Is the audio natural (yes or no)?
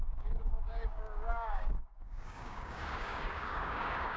no